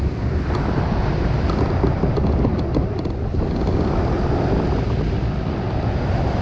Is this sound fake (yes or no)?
no